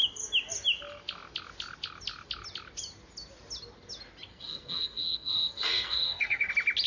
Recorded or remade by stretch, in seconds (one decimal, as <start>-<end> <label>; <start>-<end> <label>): 0.0-4.3 recorded; 4.3-6.5 remade; 6.5-6.9 recorded